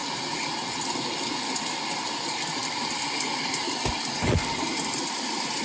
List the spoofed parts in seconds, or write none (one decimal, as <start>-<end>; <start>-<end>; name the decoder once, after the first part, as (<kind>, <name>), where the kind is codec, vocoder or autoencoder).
1.4-2.6 (vocoder, BigVGAN v2); 3.2-5.6